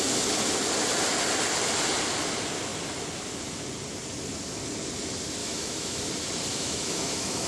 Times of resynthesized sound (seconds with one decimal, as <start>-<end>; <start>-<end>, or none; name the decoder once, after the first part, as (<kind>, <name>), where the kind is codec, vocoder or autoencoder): 5.4-6.0 (autoencoder, DAC-VAE); 6.5-7.5